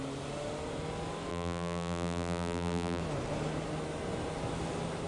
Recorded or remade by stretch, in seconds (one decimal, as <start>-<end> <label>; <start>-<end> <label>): 0.0-1.3 recorded; 1.3-3.0 remade; 3.0-5.1 recorded